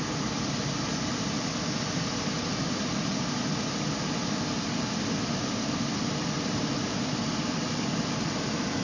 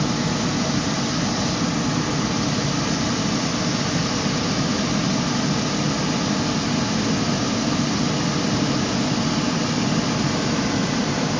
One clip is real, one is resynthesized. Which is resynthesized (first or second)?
first